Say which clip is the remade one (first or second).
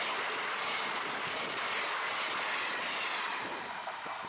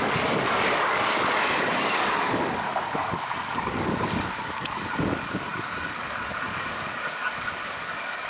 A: second